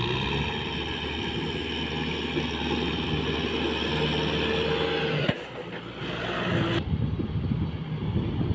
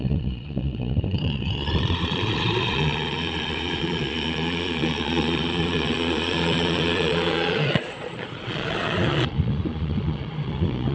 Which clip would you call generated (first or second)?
second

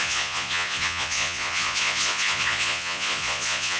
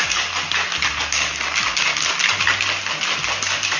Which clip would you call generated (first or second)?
first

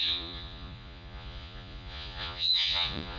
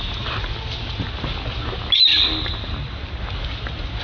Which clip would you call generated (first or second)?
first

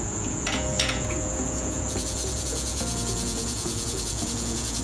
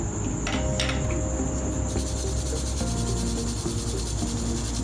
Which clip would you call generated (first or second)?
first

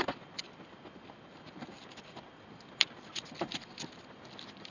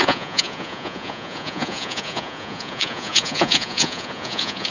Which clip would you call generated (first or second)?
second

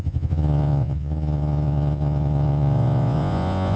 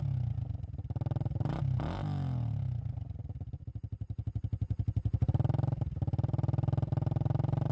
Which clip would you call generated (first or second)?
first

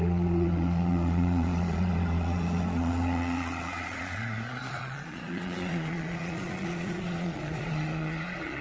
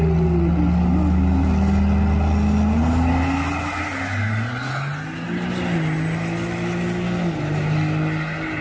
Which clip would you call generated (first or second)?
first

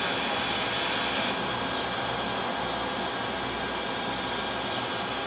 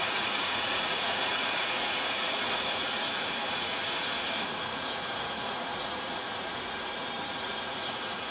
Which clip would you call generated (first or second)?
second